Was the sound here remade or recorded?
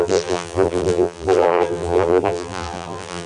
remade